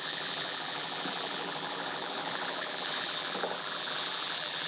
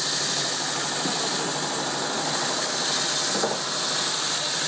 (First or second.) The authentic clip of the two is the second